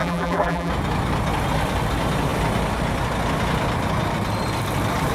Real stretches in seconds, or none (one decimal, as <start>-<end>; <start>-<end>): 0.7-5.1